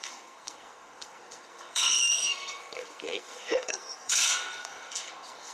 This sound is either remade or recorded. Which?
remade